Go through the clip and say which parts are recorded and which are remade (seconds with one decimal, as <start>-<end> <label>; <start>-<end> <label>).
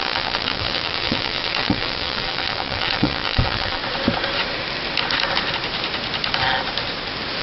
0.0-3.8 remade; 3.8-7.4 recorded